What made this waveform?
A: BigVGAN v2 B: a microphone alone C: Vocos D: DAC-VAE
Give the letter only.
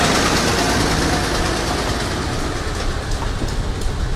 B